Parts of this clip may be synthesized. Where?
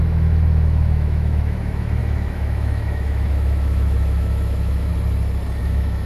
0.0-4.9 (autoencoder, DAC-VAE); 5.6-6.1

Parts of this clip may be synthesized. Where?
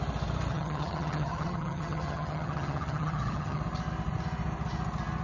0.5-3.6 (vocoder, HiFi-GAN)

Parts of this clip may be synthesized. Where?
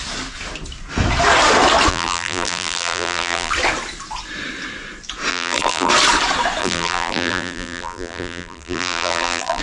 1.9-3.5 (vocoder, BigVGAN v2); 5.3-5.9; 6.6-9.6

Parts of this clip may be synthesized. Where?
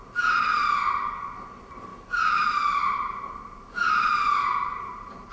1.9-5.3 (vocoder, BigVGAN v2)